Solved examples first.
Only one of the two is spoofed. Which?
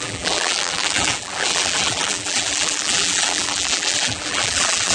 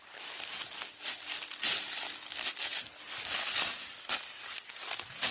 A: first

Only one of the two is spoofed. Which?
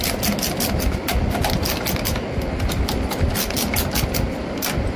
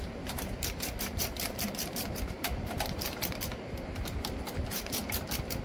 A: second